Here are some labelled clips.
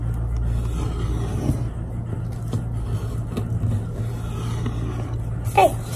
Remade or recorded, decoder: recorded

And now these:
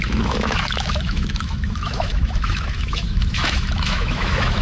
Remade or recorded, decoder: remade, autoencoder, DAC-VAE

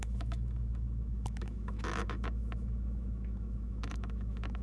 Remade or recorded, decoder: remade, autoencoder, DAC-VAE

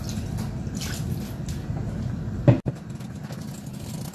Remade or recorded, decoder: recorded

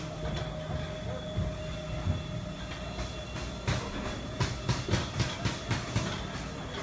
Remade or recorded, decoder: recorded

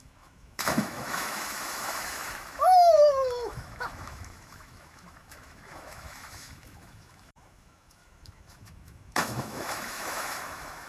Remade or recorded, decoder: remade, autoencoder, DAC-VAE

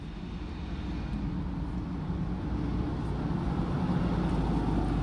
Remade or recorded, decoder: recorded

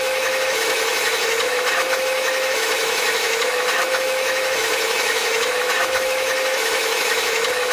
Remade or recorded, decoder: remade, autoencoder, DAC-VAE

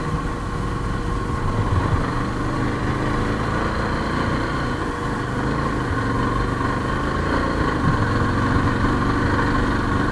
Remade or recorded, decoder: recorded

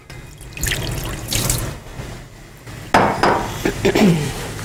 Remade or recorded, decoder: recorded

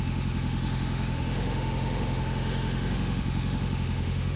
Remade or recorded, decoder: remade, autoencoder, DAC-VAE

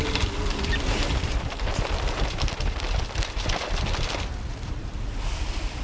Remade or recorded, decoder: recorded